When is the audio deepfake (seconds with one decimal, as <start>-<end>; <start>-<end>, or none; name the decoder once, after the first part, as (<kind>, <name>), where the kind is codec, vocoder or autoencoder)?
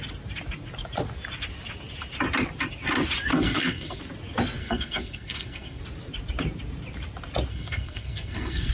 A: 3.3-4.0 (codec, SNAC); 4.6-5.8; 7.5-8.7